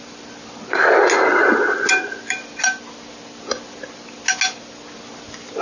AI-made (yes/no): no